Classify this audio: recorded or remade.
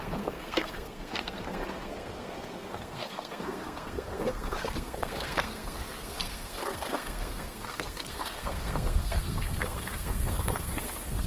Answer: remade